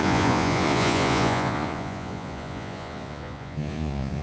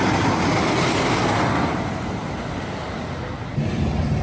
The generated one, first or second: first